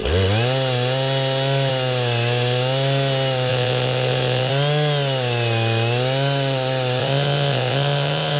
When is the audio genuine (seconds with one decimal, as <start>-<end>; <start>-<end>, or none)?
0.0-3.5; 4.5-7.0